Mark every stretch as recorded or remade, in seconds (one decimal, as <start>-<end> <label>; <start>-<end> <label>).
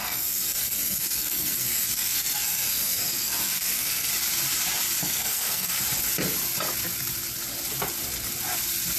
0.0-4.1 remade; 4.1-5.0 recorded; 5.0-5.8 remade; 5.8-9.0 recorded